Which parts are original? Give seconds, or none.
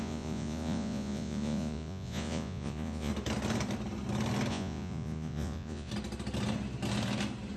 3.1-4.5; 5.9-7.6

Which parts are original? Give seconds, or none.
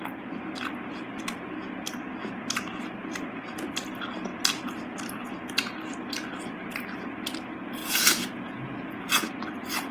0.0-7.8; 9.3-9.9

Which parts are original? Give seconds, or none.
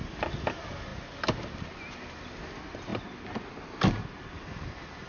0.0-5.1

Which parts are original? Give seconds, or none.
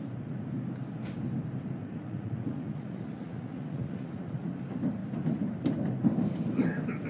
0.0-1.8; 4.4-7.1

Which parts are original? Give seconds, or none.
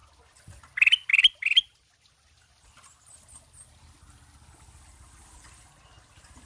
0.0-6.5